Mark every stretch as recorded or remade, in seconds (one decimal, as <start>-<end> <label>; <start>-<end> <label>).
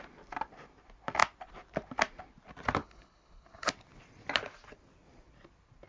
0.0-2.8 recorded; 2.8-3.7 remade; 3.7-5.9 recorded